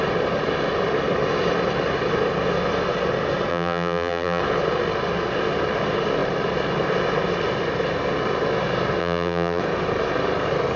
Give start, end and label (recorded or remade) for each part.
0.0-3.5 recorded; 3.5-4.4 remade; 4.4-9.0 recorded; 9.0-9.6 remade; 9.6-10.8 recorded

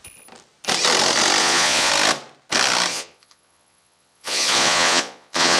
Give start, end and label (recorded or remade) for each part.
0.0-1.4 recorded; 1.4-1.9 remade; 1.9-2.9 recorded; 2.9-5.6 remade

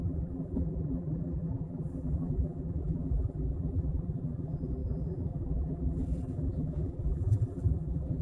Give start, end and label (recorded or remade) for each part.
0.0-8.2 remade

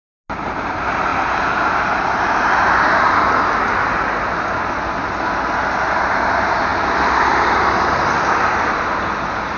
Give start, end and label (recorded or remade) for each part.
0.0-9.6 recorded

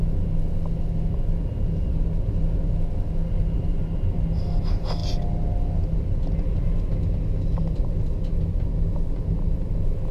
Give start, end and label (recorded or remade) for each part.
0.0-10.1 recorded

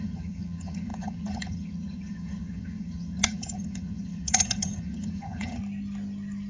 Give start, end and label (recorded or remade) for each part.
0.0-5.6 remade; 5.6-6.5 recorded

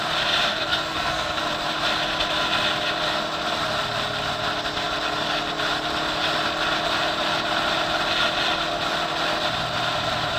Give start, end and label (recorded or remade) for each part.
0.0-0.5 recorded; 0.5-1.4 remade; 1.4-10.4 recorded

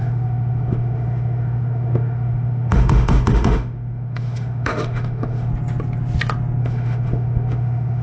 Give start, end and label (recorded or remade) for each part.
0.0-5.5 remade; 5.5-6.6 recorded; 6.6-8.0 remade